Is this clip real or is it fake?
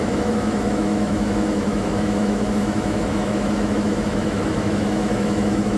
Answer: fake